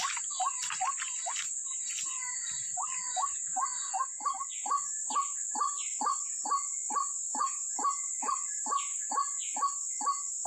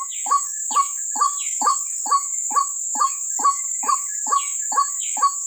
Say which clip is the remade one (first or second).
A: second